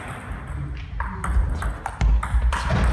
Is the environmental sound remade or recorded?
recorded